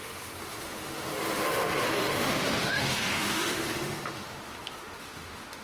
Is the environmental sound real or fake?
fake